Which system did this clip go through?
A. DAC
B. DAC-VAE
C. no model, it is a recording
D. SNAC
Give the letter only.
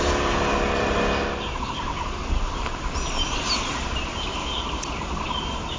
C